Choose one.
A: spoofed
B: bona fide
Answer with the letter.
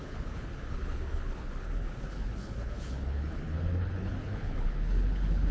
A